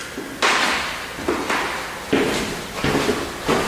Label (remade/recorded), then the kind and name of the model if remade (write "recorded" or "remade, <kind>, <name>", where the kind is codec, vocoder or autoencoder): recorded